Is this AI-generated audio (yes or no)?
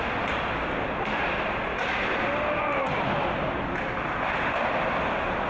no